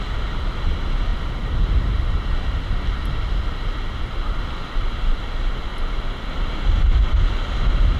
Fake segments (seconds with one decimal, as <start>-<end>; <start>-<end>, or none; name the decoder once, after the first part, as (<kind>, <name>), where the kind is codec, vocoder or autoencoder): none